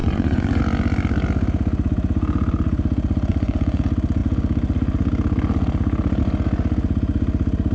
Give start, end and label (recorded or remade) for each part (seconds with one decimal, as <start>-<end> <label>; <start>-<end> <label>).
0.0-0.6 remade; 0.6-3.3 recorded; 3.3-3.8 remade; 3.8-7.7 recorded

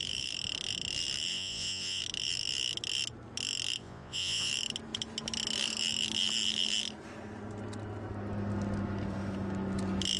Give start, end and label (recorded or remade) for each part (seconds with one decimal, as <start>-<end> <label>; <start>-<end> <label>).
0.0-1.3 recorded; 1.3-2.0 remade; 2.0-3.8 recorded; 3.8-4.5 remade; 4.5-10.2 recorded

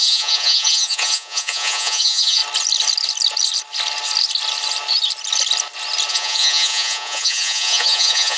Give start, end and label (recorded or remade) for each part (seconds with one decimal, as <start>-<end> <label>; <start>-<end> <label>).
0.0-2.4 remade; 2.4-6.1 recorded; 6.1-8.4 remade

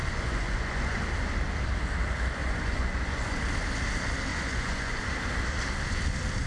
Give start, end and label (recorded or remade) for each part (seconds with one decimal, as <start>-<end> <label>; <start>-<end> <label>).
0.0-1.0 remade; 1.0-2.4 recorded; 2.4-3.4 remade; 3.4-4.3 recorded; 4.3-5.0 remade; 5.0-6.5 recorded

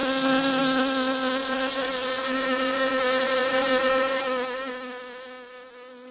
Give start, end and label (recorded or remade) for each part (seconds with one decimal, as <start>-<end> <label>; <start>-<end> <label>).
0.0-1.4 recorded; 1.4-4.7 remade; 4.7-6.1 recorded

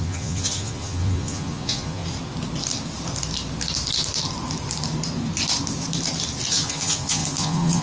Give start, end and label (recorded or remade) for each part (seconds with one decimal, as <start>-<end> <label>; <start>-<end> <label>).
0.0-2.0 remade; 2.0-6.5 recorded; 6.5-7.8 remade

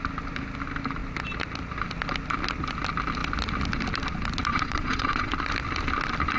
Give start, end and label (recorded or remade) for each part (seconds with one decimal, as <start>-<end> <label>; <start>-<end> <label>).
0.0-4.5 recorded; 4.5-5.3 remade; 5.3-6.4 recorded

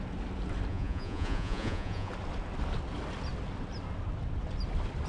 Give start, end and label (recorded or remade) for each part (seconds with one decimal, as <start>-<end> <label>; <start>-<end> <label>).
0.0-0.7 recorded; 0.7-2.1 remade; 2.1-5.1 recorded